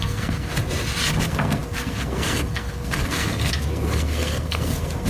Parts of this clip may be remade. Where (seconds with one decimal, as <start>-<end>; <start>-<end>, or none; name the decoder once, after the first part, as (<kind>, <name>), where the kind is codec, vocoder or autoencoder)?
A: 0.0-0.5 (codec, SNAC); 1.2-5.1